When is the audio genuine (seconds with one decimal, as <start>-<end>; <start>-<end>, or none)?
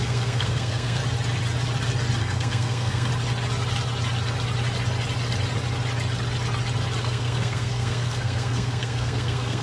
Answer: 1.0-2.2; 3.1-7.0